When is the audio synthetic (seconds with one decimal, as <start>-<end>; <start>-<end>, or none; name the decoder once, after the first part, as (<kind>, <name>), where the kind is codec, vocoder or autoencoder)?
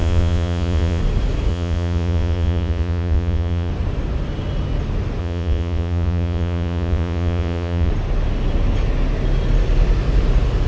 0.0-1.0 (vocoder, Vocos); 1.5-3.7; 5.2-7.9